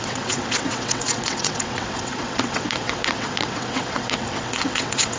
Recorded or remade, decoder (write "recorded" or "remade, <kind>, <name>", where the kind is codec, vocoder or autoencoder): remade, vocoder, WaveNeXt